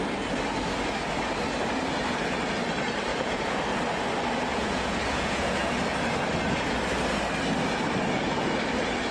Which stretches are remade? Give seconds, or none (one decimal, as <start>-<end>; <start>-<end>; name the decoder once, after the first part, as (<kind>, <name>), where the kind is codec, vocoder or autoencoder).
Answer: 3.1-3.6 (vocoder, Vocos); 4.5-5.7